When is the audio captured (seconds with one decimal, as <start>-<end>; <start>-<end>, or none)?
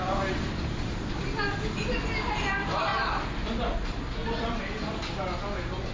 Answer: 0.0-5.9